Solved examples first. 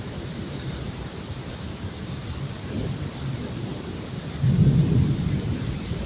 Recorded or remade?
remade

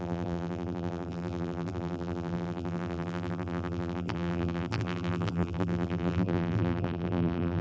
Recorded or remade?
remade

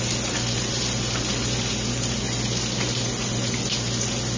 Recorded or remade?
recorded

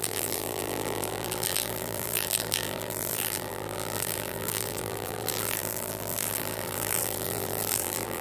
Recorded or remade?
remade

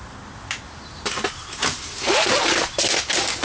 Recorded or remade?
recorded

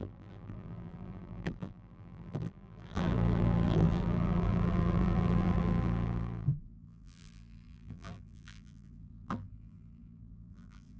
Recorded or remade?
remade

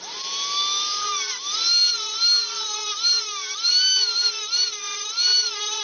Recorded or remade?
remade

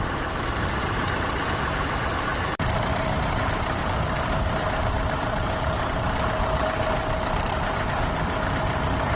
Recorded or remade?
remade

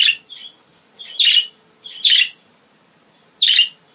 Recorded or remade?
recorded